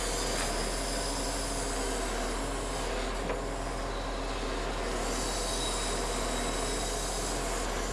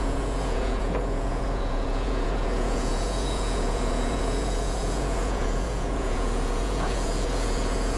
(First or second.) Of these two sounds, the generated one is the second